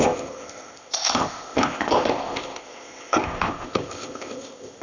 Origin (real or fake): fake